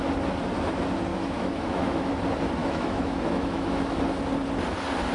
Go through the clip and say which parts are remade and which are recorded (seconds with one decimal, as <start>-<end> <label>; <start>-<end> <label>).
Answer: 0.0-1.1 recorded; 1.1-2.1 remade; 2.1-2.6 recorded; 2.6-4.0 remade; 4.0-5.1 recorded